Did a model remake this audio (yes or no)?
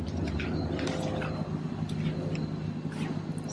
no